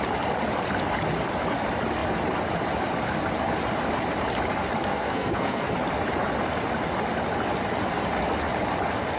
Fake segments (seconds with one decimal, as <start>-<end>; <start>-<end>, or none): 4.9-5.7

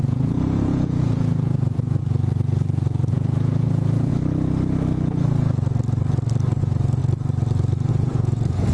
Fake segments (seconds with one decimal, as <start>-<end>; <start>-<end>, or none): 0.0-2.0; 3.1-4.1; 6.6-7.0; 7.9-8.7

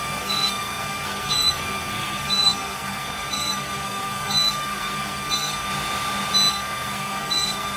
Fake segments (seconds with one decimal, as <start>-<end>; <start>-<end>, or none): 0.0-5.7; 6.5-7.8

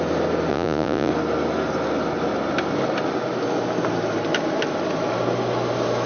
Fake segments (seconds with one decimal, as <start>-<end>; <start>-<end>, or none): 0.5-1.1

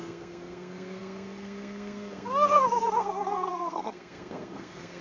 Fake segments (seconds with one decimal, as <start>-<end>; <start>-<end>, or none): 0.0-5.0